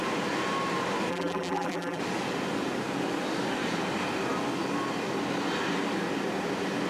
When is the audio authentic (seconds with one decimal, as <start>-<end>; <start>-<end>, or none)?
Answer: 0.0-1.1; 2.0-6.9